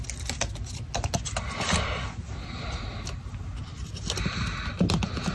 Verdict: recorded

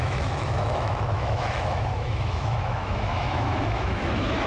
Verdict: remade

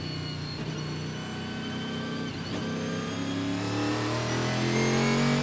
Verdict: recorded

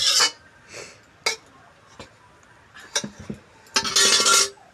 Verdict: recorded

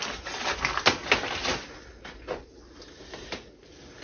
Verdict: recorded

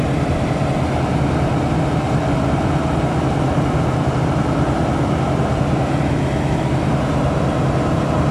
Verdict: recorded